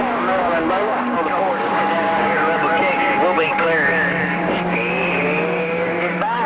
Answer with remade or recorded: remade